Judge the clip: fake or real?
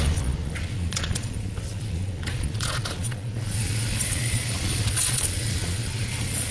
fake